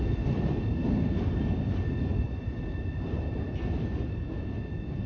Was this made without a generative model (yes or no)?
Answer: yes